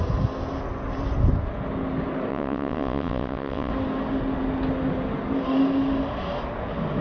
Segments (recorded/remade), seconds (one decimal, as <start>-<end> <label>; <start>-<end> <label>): 0.0-2.3 recorded; 2.3-3.7 remade; 3.7-7.0 recorded